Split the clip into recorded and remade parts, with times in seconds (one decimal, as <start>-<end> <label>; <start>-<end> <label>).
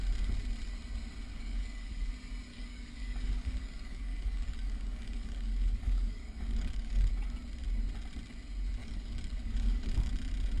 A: 0.0-1.3 recorded; 1.3-2.1 remade; 2.1-2.5 recorded; 2.5-7.1 remade; 7.1-8.8 recorded; 8.8-10.1 remade; 10.1-10.6 recorded